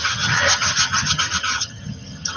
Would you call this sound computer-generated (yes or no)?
yes